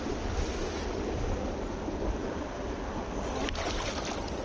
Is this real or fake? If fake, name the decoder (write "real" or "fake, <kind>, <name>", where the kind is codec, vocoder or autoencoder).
real